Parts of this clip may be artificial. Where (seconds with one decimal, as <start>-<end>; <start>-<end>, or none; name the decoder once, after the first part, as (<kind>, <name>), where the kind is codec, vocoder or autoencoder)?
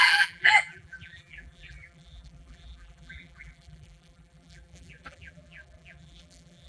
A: 0.0-6.7 (vocoder, BigVGAN v2)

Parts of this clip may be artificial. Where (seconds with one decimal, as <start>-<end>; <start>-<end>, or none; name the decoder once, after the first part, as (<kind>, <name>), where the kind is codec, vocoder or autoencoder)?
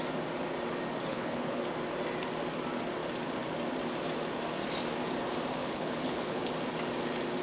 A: 1.1-1.6 (codec, HILCodec); 5.6-6.5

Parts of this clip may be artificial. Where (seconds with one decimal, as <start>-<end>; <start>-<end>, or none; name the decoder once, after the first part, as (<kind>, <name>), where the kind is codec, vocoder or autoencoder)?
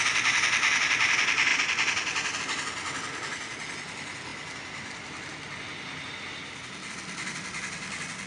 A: none